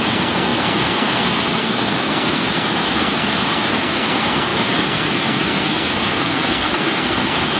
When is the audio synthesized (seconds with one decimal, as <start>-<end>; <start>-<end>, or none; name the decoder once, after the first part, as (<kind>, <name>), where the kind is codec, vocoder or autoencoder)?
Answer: 0.0-7.6 (codec, SNAC)